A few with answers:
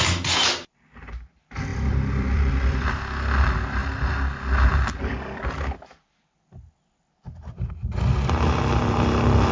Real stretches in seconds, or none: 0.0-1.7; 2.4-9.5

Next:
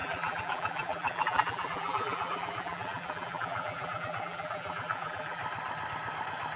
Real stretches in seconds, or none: 5.4-6.6